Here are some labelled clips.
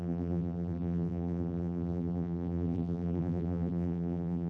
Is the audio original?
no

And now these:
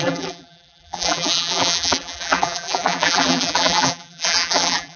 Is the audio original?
no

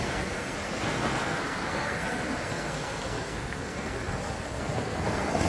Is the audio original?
no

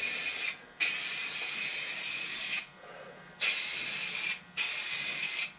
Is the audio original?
yes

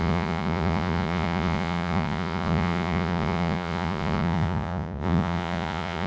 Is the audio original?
no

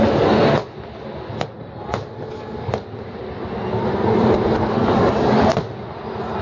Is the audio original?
yes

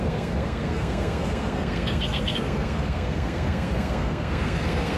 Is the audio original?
no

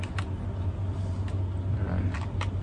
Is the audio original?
yes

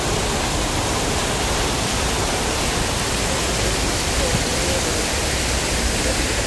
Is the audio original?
yes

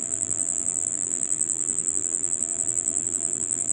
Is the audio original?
no